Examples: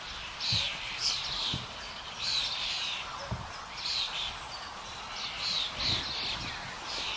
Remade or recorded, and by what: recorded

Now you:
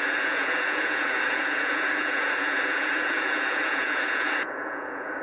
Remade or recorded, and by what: remade, vocoder, Vocos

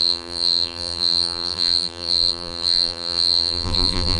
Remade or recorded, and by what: remade, vocoder, BigVGAN v2